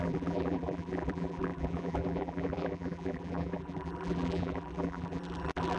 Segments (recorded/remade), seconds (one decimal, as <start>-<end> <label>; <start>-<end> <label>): 0.0-5.8 remade